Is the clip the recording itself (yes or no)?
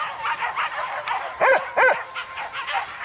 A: yes